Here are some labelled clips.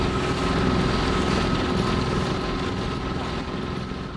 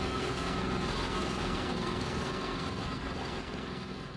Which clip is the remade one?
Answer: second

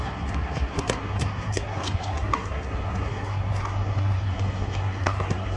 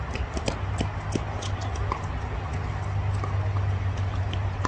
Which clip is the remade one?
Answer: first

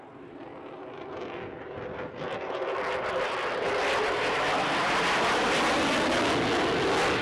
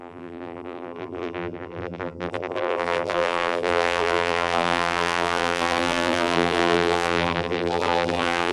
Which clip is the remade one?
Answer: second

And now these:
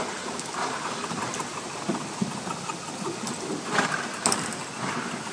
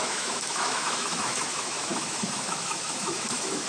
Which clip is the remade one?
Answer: second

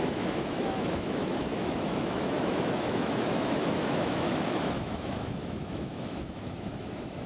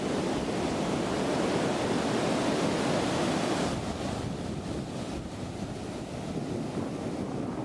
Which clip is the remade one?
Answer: first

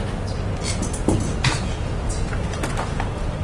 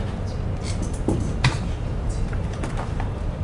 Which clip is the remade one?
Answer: second